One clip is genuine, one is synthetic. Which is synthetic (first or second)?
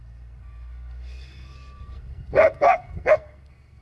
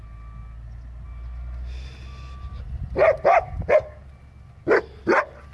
first